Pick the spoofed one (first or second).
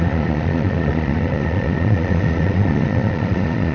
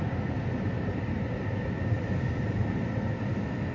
first